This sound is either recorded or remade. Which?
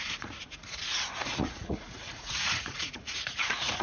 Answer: remade